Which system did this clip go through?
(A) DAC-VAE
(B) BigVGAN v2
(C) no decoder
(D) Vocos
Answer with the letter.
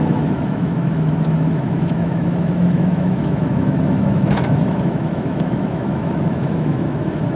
A